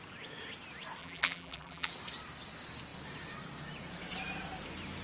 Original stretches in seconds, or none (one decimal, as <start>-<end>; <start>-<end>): 0.0-1.0; 1.9-5.0